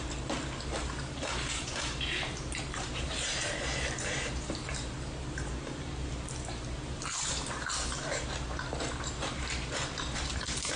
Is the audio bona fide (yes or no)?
no